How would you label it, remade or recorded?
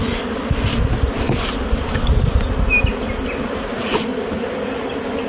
recorded